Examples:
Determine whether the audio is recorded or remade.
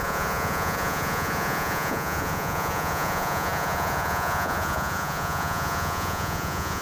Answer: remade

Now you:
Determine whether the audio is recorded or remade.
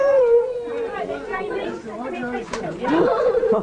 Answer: remade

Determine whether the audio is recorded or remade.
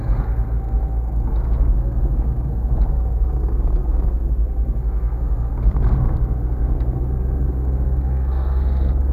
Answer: remade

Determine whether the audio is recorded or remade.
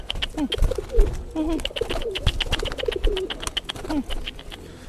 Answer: recorded